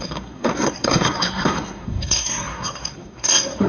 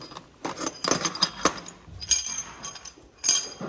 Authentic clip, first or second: second